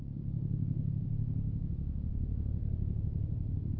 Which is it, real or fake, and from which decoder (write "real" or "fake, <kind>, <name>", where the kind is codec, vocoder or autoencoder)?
fake, vocoder, BigVGAN v2